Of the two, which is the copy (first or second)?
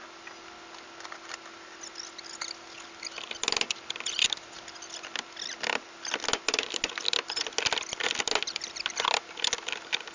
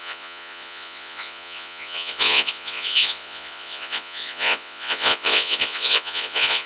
second